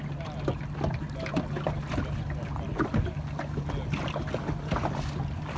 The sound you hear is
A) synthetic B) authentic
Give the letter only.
B